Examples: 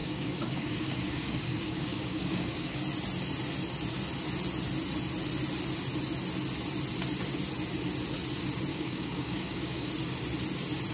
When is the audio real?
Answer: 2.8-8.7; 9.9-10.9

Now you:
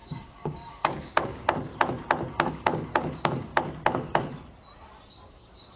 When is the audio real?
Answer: 1.7-2.5; 3.5-5.1

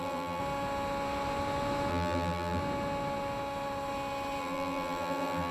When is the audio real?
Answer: 0.4-1.9; 2.6-4.4

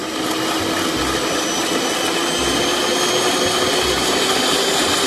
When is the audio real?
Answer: 0.0-5.1

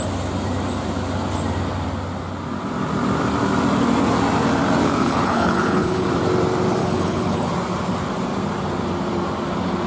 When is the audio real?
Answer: 0.0-5.0; 6.1-6.8; 7.5-9.9

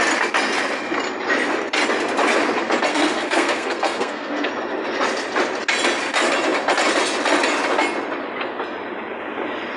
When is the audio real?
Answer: 0.0-2.9; 4.5-9.8

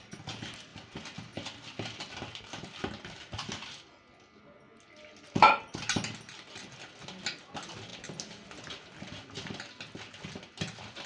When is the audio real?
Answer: 0.0-11.1

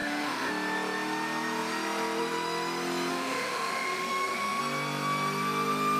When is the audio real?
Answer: 0.5-3.1; 4.6-6.0